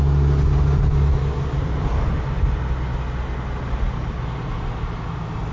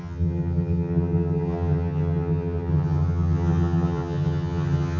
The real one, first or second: first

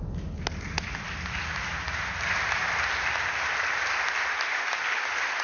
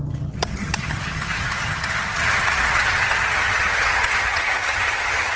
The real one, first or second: first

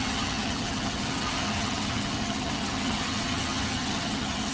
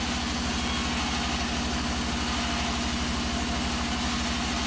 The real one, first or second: second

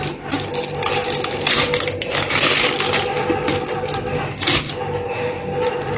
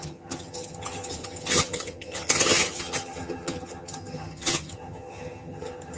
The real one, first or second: first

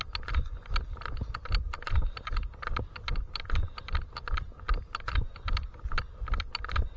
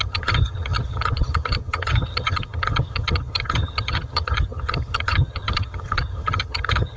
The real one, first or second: first